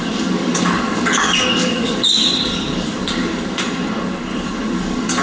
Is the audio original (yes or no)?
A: no